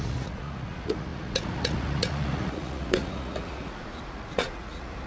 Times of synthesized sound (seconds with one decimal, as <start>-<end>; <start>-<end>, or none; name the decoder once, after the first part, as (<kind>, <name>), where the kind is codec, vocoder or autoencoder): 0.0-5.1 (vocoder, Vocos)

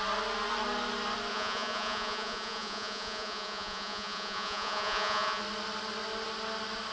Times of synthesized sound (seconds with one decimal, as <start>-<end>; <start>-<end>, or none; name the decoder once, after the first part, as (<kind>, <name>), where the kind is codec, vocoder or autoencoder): 1.3-5.4 (vocoder, Vocos)

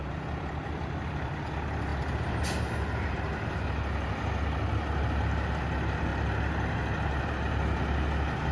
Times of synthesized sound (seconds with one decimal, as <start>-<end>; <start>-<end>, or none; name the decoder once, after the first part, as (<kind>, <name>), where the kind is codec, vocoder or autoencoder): none

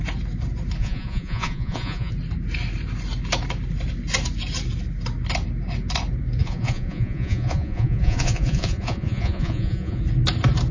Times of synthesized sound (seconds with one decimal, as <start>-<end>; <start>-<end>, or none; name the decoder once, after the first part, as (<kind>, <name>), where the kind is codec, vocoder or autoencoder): 0.8-2.1 (vocoder, Vocos); 6.4-10.0